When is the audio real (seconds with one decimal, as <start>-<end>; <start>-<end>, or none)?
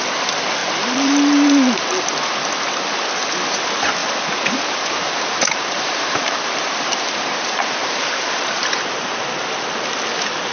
0.0-0.6; 2.0-4.0; 9.2-10.5